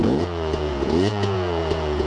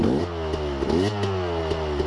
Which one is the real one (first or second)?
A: second